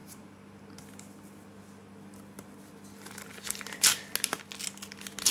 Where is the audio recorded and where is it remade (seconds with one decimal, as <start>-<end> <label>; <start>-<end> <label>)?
0.0-0.6 remade; 0.6-5.3 recorded